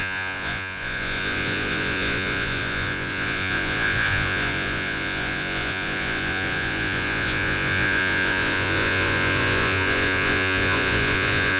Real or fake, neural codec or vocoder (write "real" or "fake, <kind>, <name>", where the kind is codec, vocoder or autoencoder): fake, vocoder, Vocos